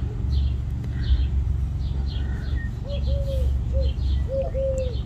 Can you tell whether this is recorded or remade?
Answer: recorded